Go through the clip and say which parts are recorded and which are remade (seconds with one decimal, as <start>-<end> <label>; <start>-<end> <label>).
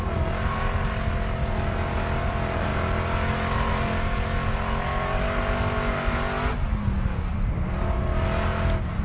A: 0.0-9.0 recorded